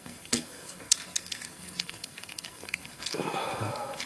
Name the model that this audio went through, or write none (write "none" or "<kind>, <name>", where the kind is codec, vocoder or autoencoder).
codec, SNAC